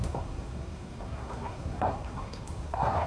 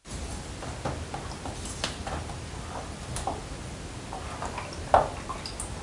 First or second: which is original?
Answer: second